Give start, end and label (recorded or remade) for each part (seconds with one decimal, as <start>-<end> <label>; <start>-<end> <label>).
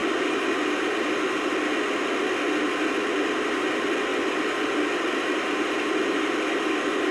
0.0-7.1 recorded